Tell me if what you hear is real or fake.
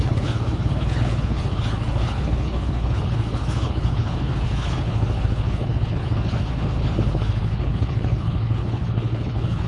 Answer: fake